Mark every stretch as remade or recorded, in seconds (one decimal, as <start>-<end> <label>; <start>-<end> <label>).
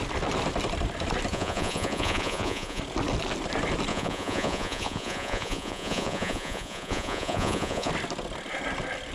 0.0-1.3 recorded; 1.3-2.8 remade; 2.8-3.9 recorded; 3.9-7.9 remade; 7.9-9.1 recorded